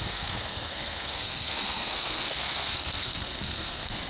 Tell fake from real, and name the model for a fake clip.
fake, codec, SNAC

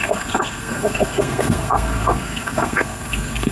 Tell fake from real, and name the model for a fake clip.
fake, codec, SNAC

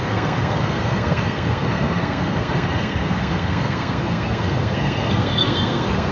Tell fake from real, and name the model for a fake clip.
fake, codec, SNAC